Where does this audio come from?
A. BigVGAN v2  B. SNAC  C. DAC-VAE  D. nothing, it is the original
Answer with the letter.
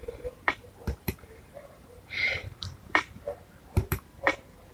A